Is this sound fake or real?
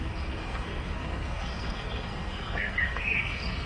fake